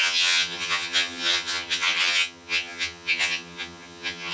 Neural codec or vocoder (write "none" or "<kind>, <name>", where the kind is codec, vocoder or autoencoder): vocoder, HiFi-GAN